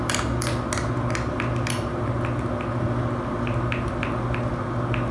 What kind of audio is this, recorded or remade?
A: recorded